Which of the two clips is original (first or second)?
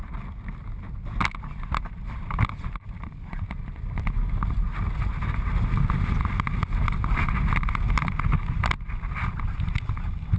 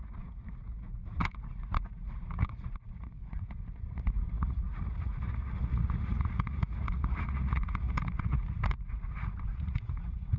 first